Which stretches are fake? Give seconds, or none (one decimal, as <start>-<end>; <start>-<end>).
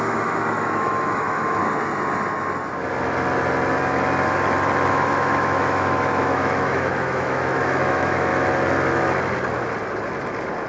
0.0-1.6; 4.9-8.3